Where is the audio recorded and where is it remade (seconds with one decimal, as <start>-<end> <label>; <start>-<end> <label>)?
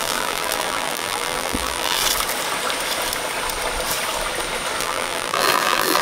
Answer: 0.0-2.0 remade; 2.0-4.8 recorded; 4.8-6.0 remade